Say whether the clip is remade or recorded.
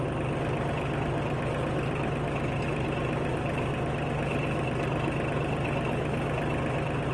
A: recorded